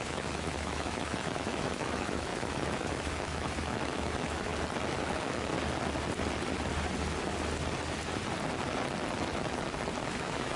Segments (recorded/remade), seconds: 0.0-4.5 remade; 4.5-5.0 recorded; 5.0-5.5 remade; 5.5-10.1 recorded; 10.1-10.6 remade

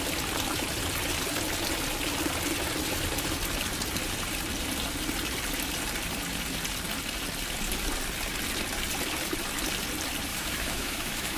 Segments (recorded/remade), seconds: 0.0-10.3 recorded; 10.3-11.4 remade

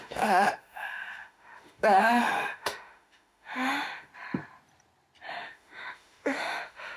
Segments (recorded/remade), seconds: 0.0-4.1 remade; 4.1-5.3 recorded; 5.3-7.0 remade